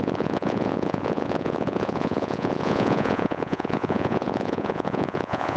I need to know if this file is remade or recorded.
remade